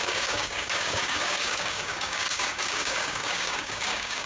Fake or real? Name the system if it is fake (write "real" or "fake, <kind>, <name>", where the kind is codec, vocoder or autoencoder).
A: fake, codec, DAC